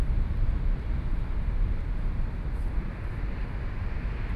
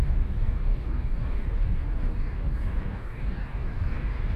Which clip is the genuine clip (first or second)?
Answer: first